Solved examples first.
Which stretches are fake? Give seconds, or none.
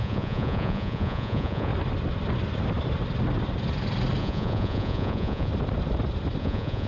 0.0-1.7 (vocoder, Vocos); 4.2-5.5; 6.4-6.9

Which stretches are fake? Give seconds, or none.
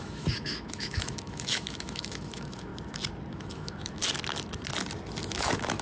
0.0-2.7 (autoencoder, DAC-VAE); 3.3-4.0; 5.3-5.8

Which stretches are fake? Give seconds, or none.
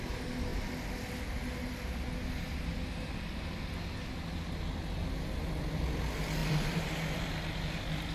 6.4-7.3 (vocoder, BigVGAN v2)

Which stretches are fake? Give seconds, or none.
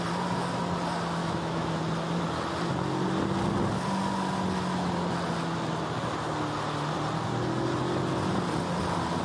1.2-1.8 (autoencoder, DAC-VAE)